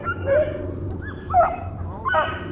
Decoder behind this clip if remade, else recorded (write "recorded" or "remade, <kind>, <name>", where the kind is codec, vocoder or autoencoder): remade, vocoder, BigVGAN v2